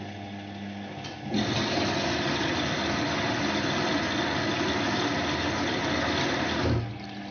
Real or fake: real